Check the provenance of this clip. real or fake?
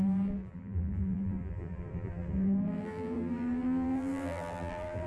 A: fake